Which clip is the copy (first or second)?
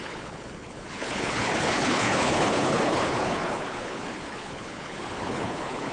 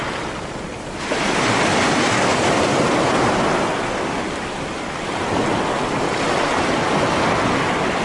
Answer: first